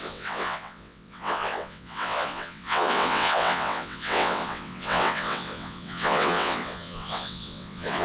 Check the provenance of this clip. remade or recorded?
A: remade